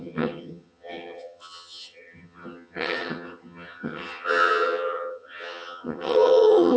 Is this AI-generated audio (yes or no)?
yes